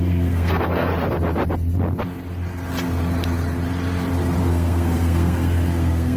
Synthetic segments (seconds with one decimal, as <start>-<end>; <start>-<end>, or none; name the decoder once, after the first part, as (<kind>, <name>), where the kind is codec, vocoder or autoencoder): 0.0-0.9 (codec, SNAC); 4.4-6.2